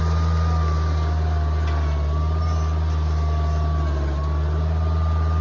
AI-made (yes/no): no